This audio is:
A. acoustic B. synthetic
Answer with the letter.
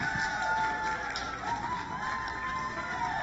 A